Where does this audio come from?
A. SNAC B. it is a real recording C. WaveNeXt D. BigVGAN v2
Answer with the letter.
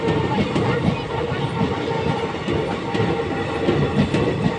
B